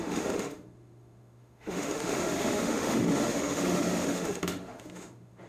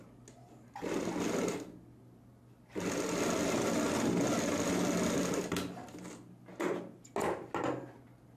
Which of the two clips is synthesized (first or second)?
first